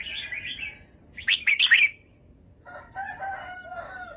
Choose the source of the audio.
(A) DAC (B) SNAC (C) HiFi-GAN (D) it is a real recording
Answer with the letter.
D